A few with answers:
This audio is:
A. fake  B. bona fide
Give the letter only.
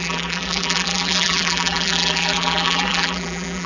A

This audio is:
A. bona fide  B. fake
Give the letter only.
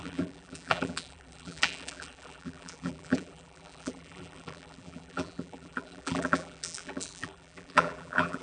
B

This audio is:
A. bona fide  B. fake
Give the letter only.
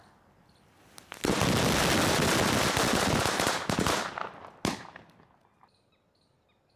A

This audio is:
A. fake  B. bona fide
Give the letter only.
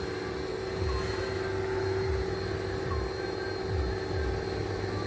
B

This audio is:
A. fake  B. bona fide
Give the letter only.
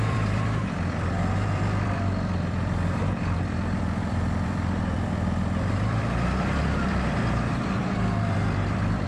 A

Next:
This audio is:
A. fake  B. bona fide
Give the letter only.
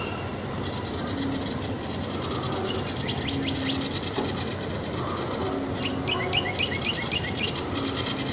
B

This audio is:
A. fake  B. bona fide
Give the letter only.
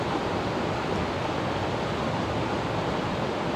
B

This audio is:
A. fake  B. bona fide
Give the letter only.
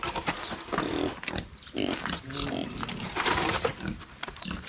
A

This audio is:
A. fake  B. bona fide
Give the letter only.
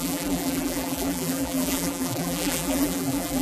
A